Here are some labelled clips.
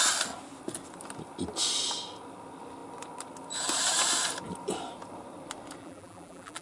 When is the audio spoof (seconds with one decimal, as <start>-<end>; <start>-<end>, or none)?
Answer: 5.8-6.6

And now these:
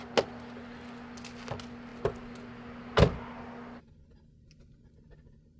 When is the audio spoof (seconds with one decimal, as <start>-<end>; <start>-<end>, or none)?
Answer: none

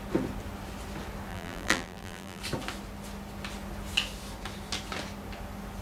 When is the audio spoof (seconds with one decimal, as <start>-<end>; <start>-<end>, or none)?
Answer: 1.3-2.4